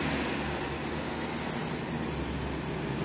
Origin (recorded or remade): recorded